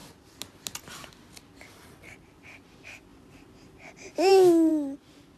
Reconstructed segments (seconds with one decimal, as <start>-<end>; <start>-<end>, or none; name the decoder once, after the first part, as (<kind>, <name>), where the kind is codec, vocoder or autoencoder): none